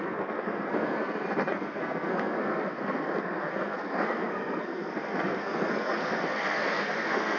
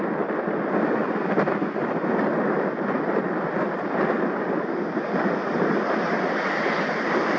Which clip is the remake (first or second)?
first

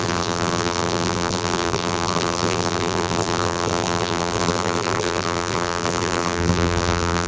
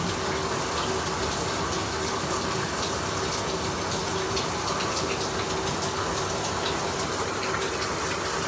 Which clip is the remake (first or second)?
first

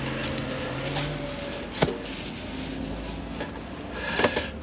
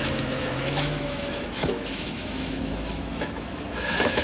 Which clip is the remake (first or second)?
second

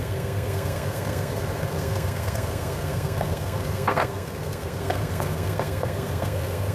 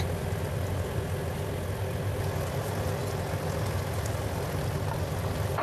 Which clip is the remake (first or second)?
first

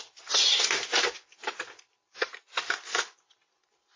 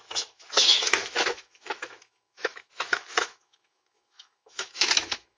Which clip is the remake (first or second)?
second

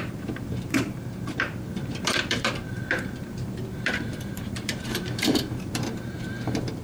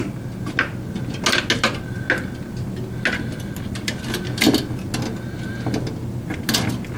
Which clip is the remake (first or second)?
first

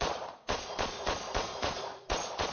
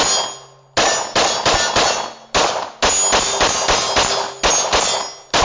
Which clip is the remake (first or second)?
first